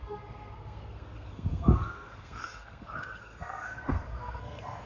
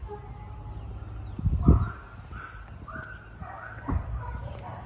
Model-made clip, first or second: first